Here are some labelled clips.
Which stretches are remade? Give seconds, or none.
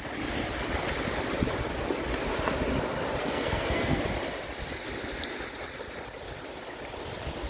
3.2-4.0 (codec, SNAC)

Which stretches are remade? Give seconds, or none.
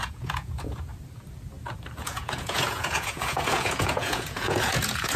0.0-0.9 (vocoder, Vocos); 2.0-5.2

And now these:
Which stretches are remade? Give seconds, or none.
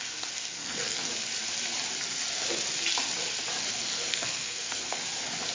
0.6-1.1 (codec, SNAC); 3.7-5.0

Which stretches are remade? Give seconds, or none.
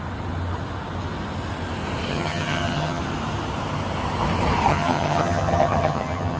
2.1-3.0 (vocoder, HiFi-GAN); 4.7-6.4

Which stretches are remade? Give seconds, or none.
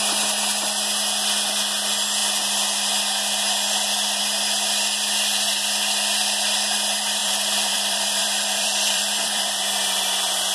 7.2-9.6 (vocoder, BigVGAN v2)